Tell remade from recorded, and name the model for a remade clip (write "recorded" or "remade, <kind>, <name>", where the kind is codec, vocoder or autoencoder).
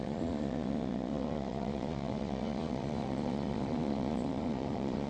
remade, vocoder, Vocos